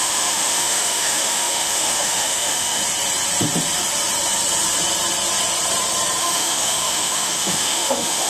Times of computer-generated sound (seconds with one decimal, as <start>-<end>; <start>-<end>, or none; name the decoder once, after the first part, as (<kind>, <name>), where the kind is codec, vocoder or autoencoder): 0.0-2.8 (autoencoder, DAC-VAE); 6.2-8.3